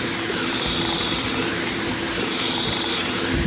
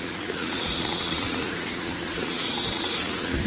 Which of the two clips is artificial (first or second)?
second